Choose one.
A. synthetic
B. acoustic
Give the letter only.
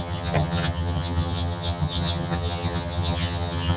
A